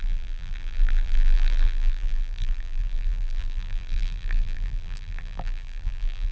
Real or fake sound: fake